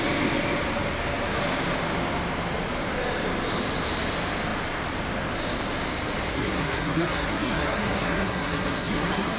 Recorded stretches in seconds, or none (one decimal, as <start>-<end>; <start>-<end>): 0.0-6.3